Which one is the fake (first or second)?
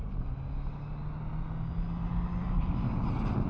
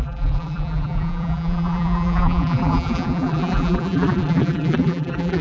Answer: second